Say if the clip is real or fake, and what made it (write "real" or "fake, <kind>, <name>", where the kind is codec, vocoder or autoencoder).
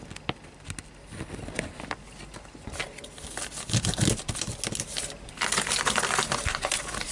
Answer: real